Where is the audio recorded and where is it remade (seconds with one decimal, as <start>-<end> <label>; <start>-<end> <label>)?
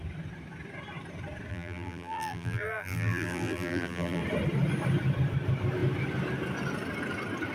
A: 0.0-1.5 recorded; 1.5-4.2 remade; 4.2-7.5 recorded